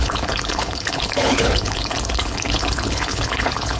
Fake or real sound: fake